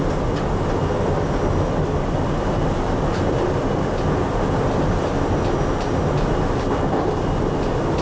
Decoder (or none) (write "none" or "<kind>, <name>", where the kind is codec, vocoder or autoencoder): none